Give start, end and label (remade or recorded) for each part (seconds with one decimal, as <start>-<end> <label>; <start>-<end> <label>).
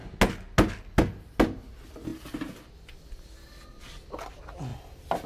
0.0-5.3 recorded